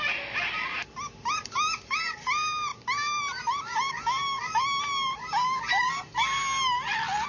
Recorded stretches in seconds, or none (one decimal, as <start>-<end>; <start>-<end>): 0.0-7.3

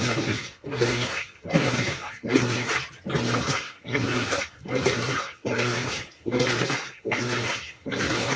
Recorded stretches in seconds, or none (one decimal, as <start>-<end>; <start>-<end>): 2.7-3.4

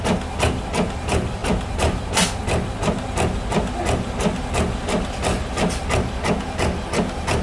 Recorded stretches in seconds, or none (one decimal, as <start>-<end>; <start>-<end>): 0.0-7.4

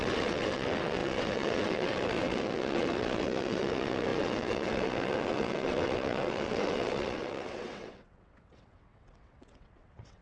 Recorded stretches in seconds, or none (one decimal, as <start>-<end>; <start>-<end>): none

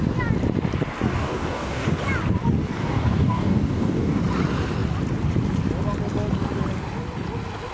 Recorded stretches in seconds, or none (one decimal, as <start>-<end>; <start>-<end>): 0.0-1.1; 1.9-2.8; 4.2-7.7

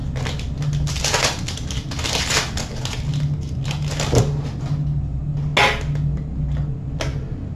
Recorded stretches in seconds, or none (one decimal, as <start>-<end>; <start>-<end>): 0.0-7.6

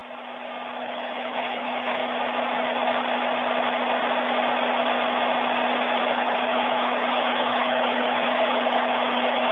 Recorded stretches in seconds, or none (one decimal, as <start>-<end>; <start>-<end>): 0.0-0.8; 2.0-6.0